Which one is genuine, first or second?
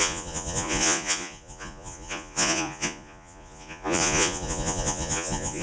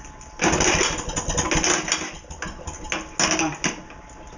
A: second